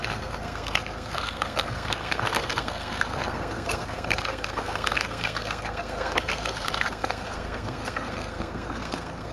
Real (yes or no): no